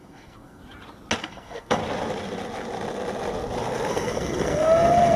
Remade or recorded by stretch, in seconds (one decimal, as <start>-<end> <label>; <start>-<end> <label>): 0.0-0.6 remade; 0.6-1.2 recorded; 1.2-1.8 remade; 1.8-3.9 recorded; 3.9-5.2 remade